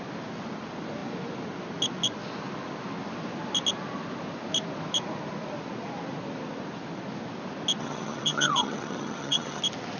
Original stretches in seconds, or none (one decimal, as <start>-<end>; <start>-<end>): 0.0-7.8; 9.6-10.0